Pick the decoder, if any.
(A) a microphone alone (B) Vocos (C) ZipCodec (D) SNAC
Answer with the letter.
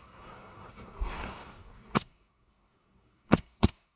D